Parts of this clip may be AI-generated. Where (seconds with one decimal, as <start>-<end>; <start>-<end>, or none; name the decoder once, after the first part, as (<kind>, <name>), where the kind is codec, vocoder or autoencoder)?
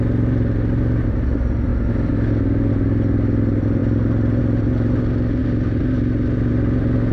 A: none